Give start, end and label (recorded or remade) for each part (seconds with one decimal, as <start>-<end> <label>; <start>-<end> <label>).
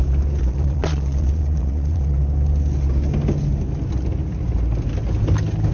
0.0-0.4 recorded; 0.4-2.2 remade; 2.2-5.7 recorded